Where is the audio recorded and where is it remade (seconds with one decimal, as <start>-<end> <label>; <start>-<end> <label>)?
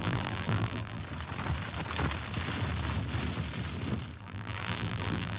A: 0.0-1.0 remade; 1.0-4.2 recorded; 4.2-5.4 remade